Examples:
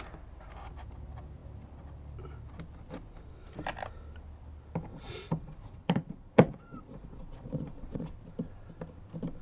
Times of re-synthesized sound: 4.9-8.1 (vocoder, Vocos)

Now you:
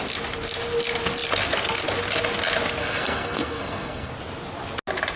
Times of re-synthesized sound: 2.8-4.1 (codec, SNAC)

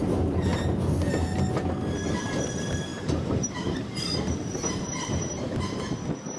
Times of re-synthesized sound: 2.9-5.6 (vocoder, BigVGAN v2)

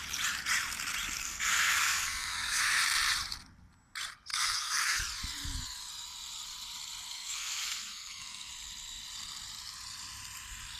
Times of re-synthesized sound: 1.2-2.8 (codec, SNAC); 4.3-5.0; 7.1-8.5

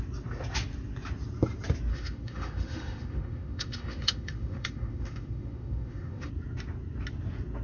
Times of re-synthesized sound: 1.9-6.3 (autoencoder, DAC-VAE)

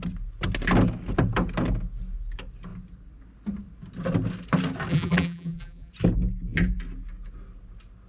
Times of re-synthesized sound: 4.9-5.9 (vocoder, BigVGAN v2)

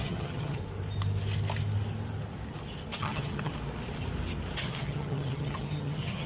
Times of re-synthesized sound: 0.0-0.6 (vocoder, HiFi-GAN); 3.0-3.5; 4.6-6.3

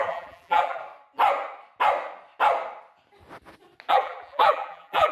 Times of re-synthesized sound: 0.0-0.8 (vocoder, BigVGAN v2); 3.9-5.1